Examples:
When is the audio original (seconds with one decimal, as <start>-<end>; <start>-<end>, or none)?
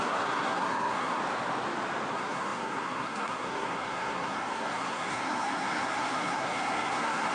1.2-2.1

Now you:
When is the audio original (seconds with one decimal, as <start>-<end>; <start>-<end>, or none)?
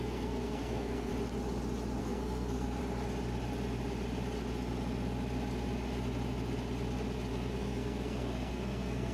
1.1-2.0; 2.8-7.3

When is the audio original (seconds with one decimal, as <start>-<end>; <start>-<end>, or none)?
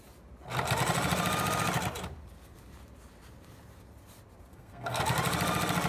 0.0-4.5; 5.0-5.9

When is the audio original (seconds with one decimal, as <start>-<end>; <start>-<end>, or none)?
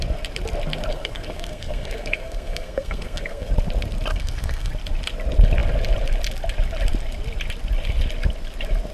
0.0-0.9; 3.5-4.1; 4.7-8.9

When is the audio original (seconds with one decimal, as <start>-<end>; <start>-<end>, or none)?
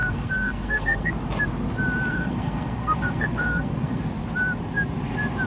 1.1-2.1; 4.0-5.5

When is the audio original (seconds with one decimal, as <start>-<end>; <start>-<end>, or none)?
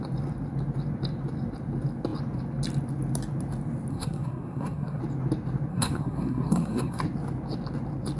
0.0-3.9; 5.0-5.7; 7.0-8.2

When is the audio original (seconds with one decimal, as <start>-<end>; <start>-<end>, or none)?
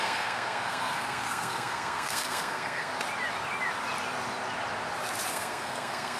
2.9-5.3